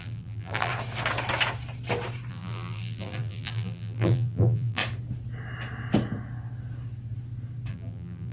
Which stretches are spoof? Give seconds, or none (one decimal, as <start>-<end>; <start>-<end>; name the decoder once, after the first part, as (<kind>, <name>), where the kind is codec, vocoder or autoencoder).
0.0-0.7 (vocoder, BigVGAN v2); 2.3-4.8; 7.7-8.3